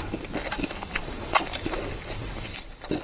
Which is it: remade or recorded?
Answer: remade